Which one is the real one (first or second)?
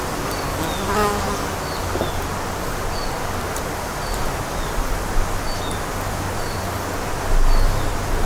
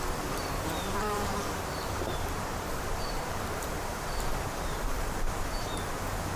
first